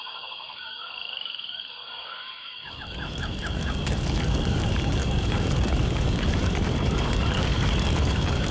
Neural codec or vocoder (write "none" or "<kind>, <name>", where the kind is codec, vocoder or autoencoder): codec, DAC